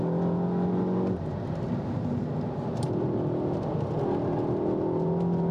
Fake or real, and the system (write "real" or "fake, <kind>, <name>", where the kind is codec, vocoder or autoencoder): real